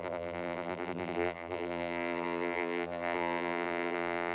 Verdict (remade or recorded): remade